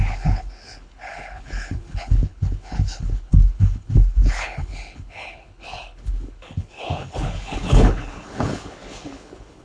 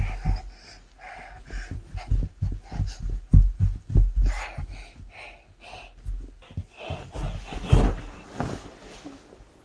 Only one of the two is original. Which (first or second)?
second